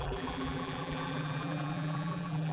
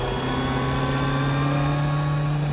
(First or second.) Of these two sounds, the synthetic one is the first